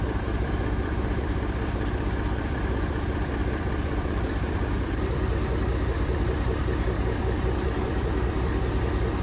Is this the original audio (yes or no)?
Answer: no